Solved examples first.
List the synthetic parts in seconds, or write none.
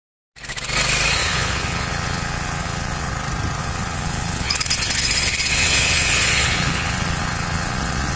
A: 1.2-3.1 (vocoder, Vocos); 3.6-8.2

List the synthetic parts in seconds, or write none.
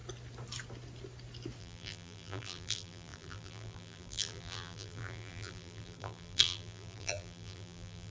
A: 1.6-8.1 (vocoder, BigVGAN v2)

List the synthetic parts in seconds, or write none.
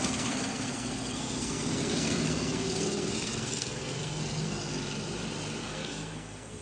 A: 0.0-4.7 (codec, SNAC); 5.6-6.6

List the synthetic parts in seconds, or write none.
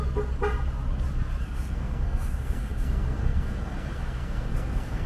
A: 1.4-5.1 (codec, SNAC)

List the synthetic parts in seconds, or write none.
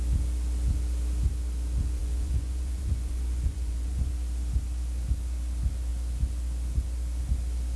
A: 2.0-4.1 (vocoder, Vocos)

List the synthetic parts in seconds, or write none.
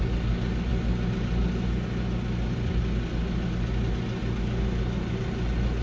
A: none